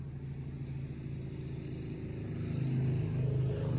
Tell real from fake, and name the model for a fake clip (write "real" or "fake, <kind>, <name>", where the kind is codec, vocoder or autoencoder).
real